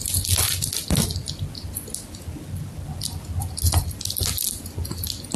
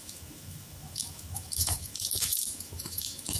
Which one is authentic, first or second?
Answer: first